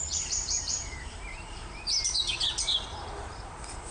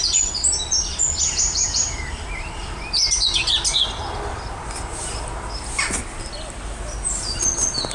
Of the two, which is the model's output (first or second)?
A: first